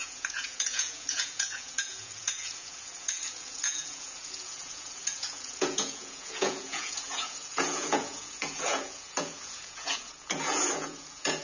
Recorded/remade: remade